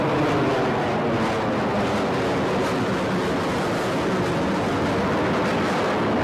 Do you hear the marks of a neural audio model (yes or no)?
no